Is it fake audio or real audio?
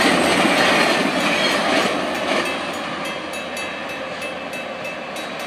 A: real